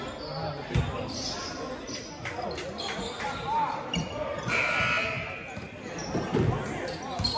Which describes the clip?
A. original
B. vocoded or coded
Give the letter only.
A